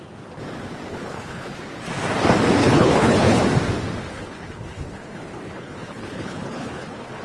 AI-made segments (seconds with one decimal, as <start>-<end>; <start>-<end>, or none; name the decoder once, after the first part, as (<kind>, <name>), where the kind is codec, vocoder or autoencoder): 0.9-1.6 (codec, HILCodec); 2.6-3.4; 4.1-7.2